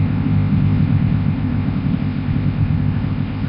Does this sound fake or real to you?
fake